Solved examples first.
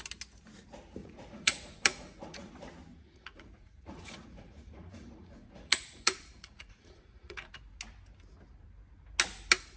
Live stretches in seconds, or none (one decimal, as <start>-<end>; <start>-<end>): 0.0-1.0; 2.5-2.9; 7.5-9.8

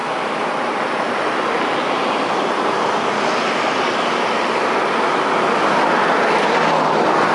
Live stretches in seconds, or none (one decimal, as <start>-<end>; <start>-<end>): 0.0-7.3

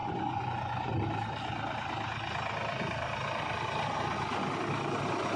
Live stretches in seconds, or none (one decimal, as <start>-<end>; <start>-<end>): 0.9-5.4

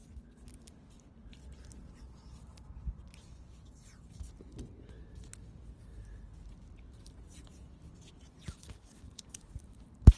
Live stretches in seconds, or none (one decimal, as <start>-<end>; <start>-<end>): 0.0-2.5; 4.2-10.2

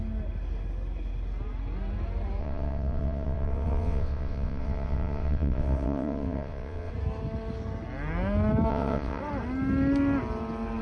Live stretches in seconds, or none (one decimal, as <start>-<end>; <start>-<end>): 0.0-2.4; 6.9-8.7; 9.2-10.8

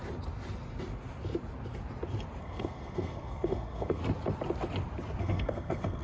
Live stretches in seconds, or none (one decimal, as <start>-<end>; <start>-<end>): 0.0-2.4; 4.0-5.2

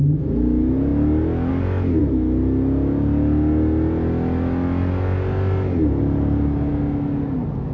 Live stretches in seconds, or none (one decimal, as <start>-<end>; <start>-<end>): 0.0-7.7

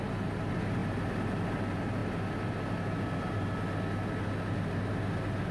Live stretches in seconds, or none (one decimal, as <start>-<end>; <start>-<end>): 0.0-5.5